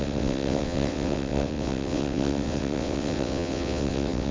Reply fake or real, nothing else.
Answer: fake